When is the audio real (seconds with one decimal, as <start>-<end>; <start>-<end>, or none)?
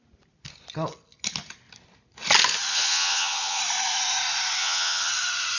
0.0-2.7; 3.6-4.6; 5.1-5.6